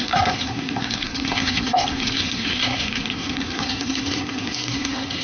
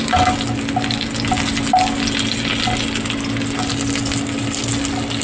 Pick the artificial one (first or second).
first